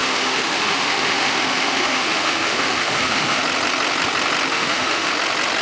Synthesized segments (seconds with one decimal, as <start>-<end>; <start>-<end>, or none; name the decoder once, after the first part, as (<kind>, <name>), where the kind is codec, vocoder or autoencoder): 0.0-3.4 (autoencoder, DAC-VAE); 4.5-5.1